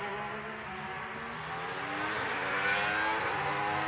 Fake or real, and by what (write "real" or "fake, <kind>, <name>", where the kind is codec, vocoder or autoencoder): real